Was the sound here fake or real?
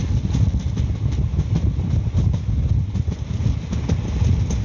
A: real